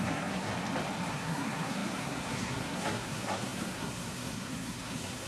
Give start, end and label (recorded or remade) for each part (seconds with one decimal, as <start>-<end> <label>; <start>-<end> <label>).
0.0-0.5 remade; 0.5-1.1 recorded; 1.1-5.3 remade